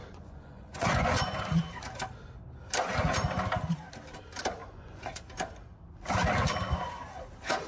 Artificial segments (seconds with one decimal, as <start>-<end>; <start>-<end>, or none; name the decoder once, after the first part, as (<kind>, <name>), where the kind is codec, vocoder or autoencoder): 0.0-1.4 (vocoder, Vocos); 4.6-5.2